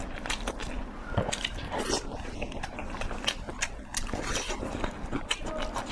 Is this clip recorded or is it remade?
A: recorded